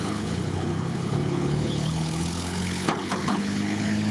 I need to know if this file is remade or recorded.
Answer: remade